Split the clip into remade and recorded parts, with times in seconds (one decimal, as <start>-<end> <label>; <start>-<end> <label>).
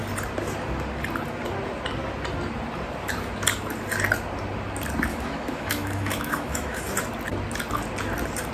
0.0-5.1 recorded; 5.1-6.8 remade; 6.8-8.5 recorded